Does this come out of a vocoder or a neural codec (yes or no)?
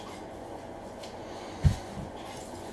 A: yes